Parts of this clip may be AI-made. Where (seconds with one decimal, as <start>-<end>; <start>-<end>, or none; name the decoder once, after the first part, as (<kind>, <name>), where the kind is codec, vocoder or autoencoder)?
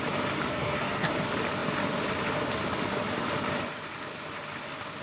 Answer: 0.5-1.1 (codec, SNAC)